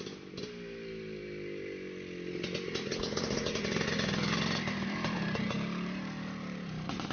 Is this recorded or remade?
recorded